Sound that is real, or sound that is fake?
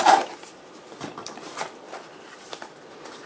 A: fake